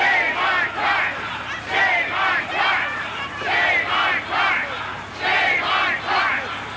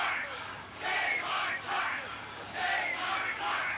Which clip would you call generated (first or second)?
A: second